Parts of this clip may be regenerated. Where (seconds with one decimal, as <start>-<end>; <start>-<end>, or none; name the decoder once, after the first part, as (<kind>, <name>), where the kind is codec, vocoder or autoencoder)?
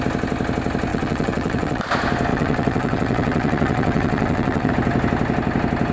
0.9-1.8 (vocoder, WaveNeXt); 2.3-4.7